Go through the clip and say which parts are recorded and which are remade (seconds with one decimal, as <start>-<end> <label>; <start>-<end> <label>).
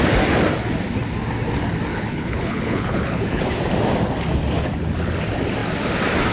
0.0-1.9 recorded; 1.9-3.4 remade; 3.4-6.3 recorded